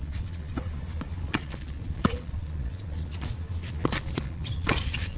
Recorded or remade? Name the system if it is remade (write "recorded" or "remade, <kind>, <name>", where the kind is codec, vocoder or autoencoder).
remade, vocoder, Vocos